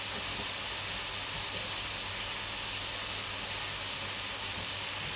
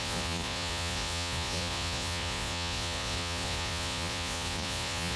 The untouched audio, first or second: first